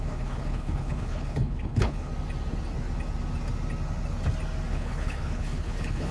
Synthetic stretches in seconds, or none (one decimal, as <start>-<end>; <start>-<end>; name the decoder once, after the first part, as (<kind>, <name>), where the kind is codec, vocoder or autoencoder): 0.0-2.1 (codec, HILCodec); 4.7-6.1